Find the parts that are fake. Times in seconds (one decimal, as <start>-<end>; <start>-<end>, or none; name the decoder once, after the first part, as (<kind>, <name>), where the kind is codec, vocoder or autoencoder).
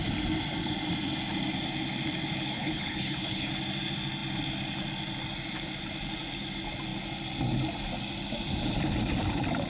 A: 2.5-3.5 (codec, HILCodec)